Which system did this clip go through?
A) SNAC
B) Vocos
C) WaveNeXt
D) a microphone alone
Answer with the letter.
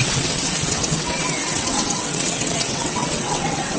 C